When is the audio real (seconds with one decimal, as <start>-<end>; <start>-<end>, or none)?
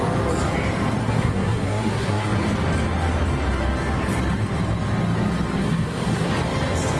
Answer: 0.0-1.0; 2.3-5.6; 6.3-7.0